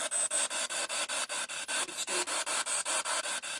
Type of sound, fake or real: real